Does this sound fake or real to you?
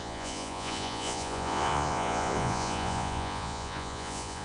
fake